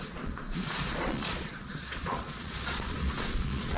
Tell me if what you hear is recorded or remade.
remade